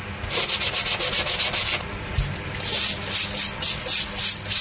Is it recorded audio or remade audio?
recorded